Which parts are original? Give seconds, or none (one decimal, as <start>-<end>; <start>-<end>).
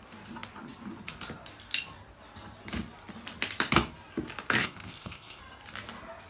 0.0-4.6; 5.4-6.3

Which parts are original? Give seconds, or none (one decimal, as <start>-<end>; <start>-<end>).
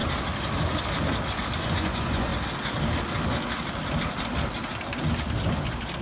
0.0-1.6; 2.3-6.0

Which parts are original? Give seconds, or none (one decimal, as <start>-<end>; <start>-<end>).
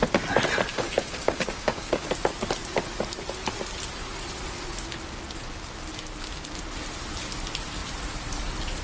0.0-0.7; 2.1-8.8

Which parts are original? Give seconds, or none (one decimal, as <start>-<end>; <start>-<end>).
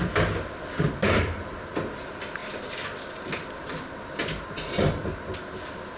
0.0-6.0